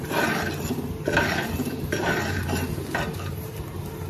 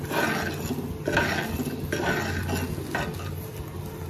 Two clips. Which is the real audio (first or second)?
second